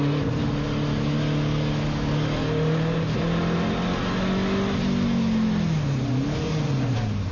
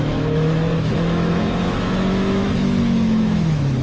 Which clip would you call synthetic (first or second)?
second